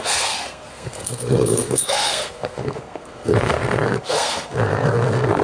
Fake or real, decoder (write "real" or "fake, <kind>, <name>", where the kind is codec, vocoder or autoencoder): fake, codec, SNAC